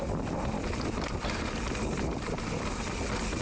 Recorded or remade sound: recorded